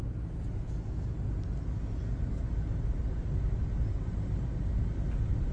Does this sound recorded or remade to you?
recorded